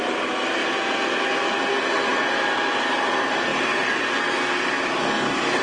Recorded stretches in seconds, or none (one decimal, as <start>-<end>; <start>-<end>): 0.0-5.6